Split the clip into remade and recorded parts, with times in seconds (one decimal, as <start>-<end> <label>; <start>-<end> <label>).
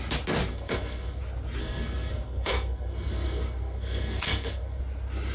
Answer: 0.0-0.5 recorded; 0.5-1.2 remade; 1.2-1.6 recorded; 1.6-4.8 remade; 4.8-5.3 recorded